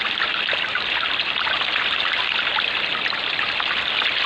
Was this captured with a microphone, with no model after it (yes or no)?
yes